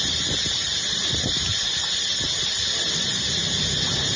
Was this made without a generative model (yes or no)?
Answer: yes